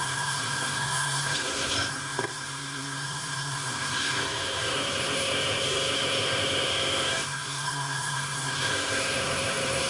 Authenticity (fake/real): fake